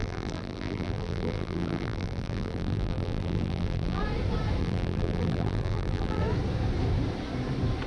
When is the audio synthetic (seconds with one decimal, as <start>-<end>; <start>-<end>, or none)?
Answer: 0.0-4.0; 4.6-6.2